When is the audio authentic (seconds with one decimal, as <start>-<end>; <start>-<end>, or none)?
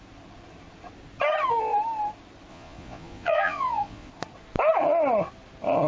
0.0-2.5; 4.1-5.9